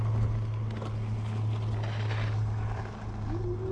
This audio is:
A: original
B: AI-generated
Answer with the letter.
A